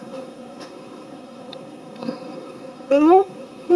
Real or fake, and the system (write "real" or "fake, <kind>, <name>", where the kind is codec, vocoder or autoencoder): fake, codec, SNAC